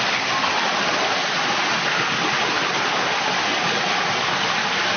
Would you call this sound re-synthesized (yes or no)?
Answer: no